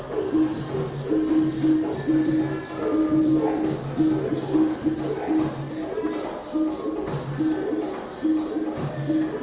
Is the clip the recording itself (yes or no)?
yes